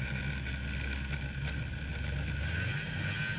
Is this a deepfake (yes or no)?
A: no